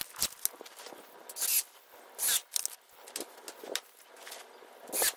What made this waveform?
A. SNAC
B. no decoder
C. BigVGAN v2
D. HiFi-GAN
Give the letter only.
B